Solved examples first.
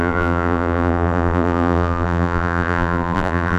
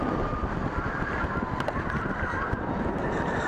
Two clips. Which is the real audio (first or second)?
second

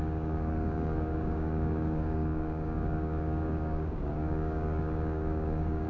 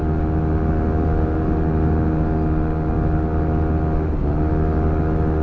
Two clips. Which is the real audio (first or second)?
second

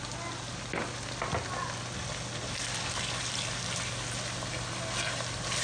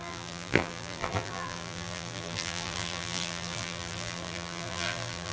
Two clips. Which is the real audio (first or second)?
first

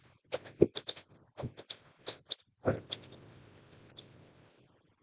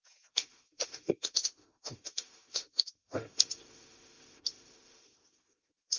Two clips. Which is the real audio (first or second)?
first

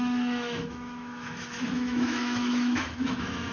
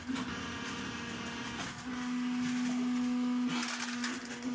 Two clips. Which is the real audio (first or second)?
second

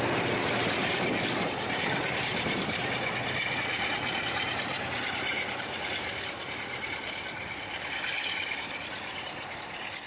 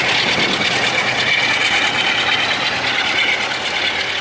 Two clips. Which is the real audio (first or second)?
second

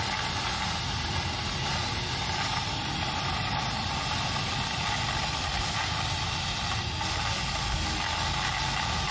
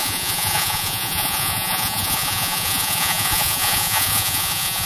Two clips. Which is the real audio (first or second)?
first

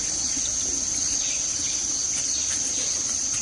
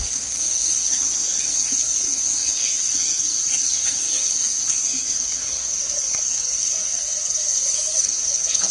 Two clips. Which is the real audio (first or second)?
first